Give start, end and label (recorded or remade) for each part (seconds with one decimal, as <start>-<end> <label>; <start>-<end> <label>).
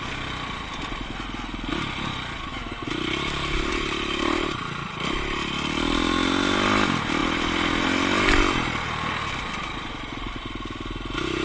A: 0.0-11.4 recorded